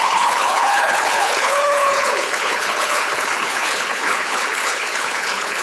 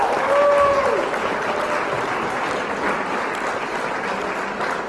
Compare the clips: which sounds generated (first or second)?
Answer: first